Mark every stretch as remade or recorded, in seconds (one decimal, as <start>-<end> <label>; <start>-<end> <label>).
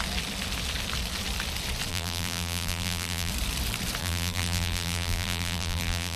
0.0-1.9 recorded; 1.9-3.3 remade; 3.3-4.0 recorded; 4.0-6.2 remade